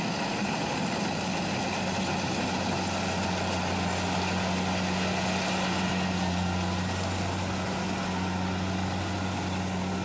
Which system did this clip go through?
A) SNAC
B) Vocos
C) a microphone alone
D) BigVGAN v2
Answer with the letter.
C